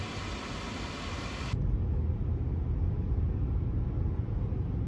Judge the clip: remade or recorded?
recorded